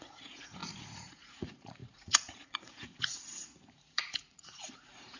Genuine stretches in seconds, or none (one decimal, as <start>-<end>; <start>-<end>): none